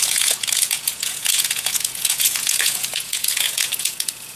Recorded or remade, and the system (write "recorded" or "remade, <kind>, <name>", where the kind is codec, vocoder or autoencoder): remade, vocoder, Vocos